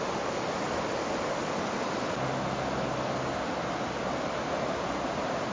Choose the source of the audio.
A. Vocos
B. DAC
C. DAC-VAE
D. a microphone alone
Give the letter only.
D